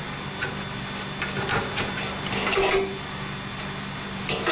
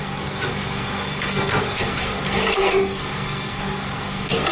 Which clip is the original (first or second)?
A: first